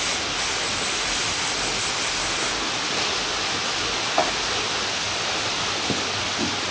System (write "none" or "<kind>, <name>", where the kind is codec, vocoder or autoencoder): none